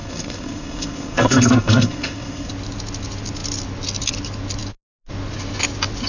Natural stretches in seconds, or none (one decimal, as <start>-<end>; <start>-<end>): 2.5-6.1